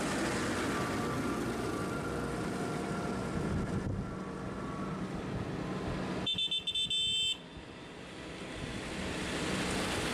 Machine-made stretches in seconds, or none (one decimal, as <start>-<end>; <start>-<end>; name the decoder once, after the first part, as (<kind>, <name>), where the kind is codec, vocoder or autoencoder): none

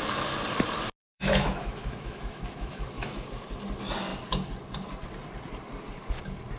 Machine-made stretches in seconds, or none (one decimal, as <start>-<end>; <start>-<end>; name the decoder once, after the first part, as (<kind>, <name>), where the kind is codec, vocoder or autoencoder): 1.0-3.3 (autoencoder, DAC-VAE)

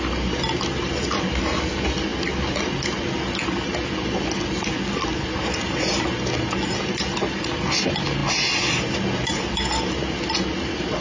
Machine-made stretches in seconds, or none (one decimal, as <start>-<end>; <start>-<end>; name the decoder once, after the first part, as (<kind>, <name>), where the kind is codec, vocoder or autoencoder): none

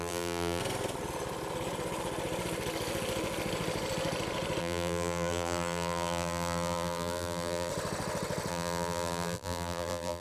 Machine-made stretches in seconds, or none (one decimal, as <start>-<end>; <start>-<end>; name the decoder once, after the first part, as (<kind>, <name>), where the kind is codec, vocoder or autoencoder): 0.0-0.6 (vocoder, BigVGAN v2); 4.6-7.7; 8.5-10.2

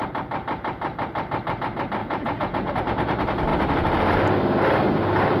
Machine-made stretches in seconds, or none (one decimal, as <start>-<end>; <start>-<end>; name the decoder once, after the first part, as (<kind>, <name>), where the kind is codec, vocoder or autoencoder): 2.0-2.7 (vocoder, Vocos)

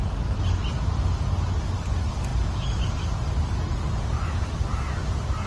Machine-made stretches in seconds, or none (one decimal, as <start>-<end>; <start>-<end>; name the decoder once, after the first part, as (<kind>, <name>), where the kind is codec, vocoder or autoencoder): none

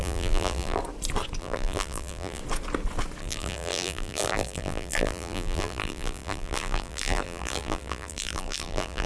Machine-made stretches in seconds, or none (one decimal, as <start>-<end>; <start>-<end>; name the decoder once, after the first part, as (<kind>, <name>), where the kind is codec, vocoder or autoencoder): 0.0-0.8 (vocoder, BigVGAN v2); 1.4-2.4; 3.2-9.1

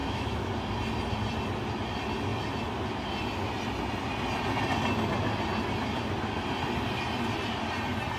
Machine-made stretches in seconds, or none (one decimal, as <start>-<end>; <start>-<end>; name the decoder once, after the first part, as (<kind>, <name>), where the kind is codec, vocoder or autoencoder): 0.0-0.5 (autoencoder, DAC-VAE)